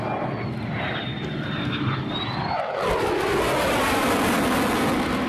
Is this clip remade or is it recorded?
recorded